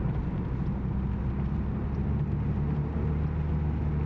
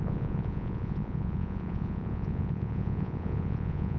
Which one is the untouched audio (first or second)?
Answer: first